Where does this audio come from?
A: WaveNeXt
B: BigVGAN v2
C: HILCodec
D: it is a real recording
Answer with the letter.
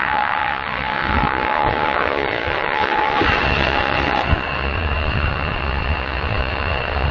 A